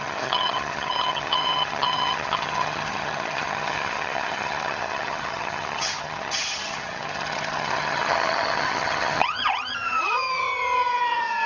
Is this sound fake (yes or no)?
yes